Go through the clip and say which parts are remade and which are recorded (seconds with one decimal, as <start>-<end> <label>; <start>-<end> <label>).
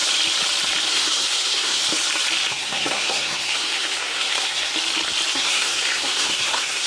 0.0-0.9 recorded; 0.9-1.8 remade; 1.8-2.5 recorded; 2.5-4.7 remade; 4.7-5.3 recorded; 5.3-6.9 remade